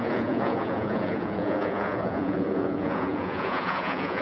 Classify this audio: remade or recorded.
remade